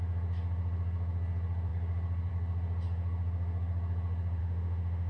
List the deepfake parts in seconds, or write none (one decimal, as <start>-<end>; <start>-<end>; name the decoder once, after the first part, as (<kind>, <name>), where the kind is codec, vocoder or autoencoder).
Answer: 4.4-5.1 (autoencoder, DAC-VAE)